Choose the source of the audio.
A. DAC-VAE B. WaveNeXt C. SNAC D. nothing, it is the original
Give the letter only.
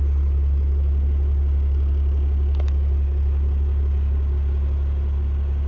D